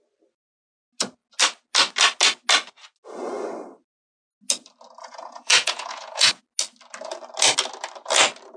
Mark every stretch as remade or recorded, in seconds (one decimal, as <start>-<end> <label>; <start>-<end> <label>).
0.0-5.0 recorded; 5.0-6.4 remade; 6.4-8.6 recorded